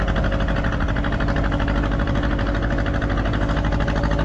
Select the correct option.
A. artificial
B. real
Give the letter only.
B